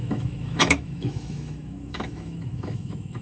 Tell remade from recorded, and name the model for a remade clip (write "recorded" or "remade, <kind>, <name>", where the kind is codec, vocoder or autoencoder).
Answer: remade, autoencoder, DAC-VAE